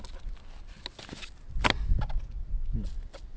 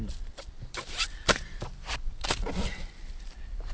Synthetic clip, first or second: second